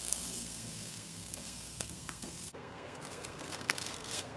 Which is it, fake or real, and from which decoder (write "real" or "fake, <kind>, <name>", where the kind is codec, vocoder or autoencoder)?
fake, codec, SNAC